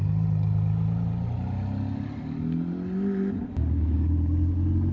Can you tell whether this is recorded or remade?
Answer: recorded